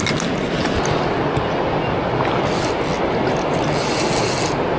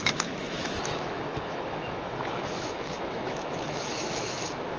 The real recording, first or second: first